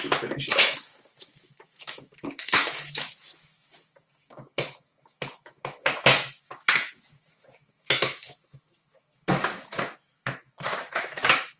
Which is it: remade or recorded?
remade